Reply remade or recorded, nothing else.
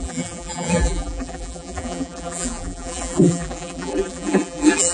remade